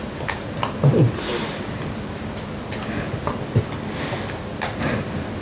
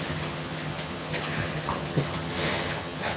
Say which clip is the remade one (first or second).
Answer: second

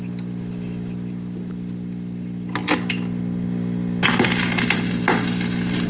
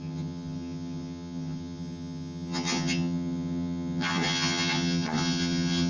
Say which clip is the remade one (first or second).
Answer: second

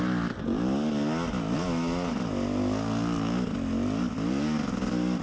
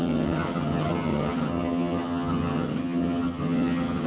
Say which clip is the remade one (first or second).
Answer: second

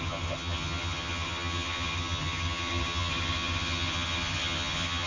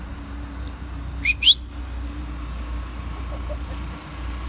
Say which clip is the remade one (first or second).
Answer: first